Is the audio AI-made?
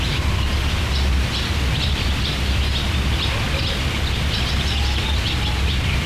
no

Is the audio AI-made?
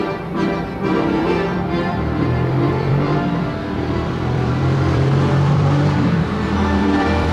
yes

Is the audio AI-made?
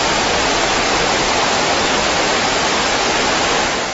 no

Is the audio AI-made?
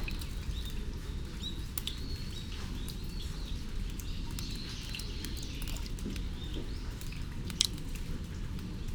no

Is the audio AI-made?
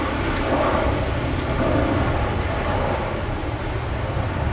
no